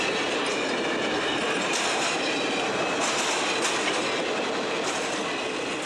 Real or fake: real